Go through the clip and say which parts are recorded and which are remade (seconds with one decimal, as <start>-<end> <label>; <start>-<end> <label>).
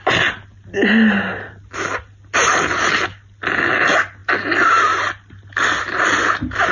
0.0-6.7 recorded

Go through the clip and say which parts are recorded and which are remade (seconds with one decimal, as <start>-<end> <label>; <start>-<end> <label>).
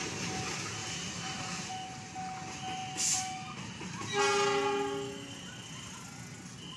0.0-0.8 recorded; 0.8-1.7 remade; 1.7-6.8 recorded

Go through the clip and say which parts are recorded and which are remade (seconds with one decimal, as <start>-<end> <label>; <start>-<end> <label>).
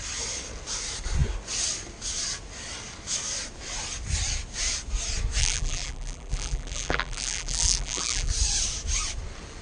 0.0-5.4 recorded; 5.4-8.3 remade; 8.3-9.6 recorded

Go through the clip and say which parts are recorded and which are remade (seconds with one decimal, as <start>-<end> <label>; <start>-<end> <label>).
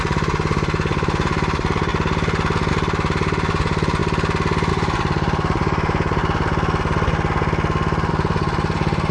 0.0-1.9 remade; 1.9-2.7 recorded; 2.7-4.0 remade; 4.0-4.7 recorded; 4.7-6.2 remade; 6.2-8.1 recorded; 8.1-9.1 remade